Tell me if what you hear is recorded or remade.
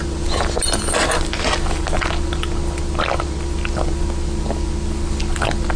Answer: recorded